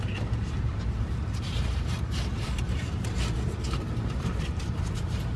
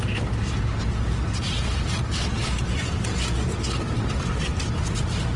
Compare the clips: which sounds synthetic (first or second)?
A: first